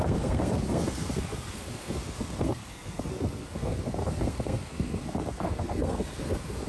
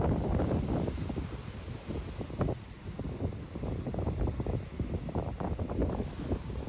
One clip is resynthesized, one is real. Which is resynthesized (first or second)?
first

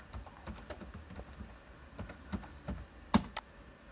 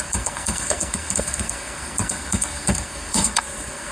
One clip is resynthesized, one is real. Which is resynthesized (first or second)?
second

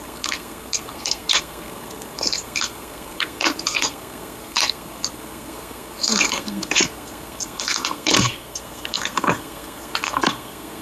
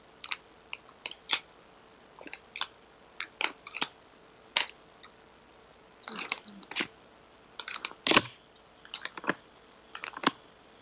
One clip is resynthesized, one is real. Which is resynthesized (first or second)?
first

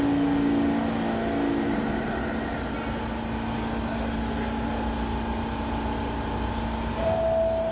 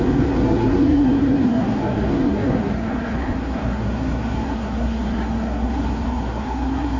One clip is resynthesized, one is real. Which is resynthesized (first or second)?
second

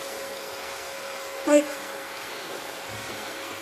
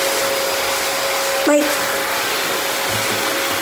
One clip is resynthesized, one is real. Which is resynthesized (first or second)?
first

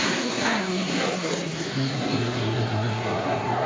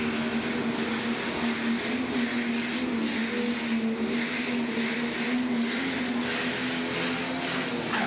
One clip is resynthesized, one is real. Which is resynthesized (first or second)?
first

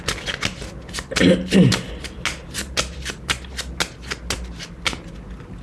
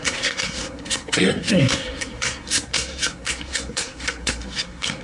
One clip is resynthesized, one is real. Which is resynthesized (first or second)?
second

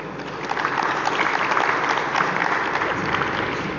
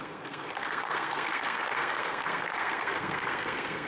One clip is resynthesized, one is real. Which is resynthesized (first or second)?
second